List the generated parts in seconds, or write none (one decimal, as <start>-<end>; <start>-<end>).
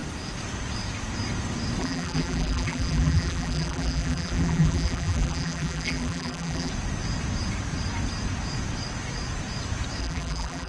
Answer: 1.8-6.7; 10.0-10.7